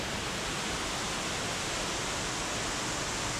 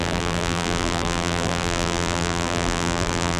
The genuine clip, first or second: first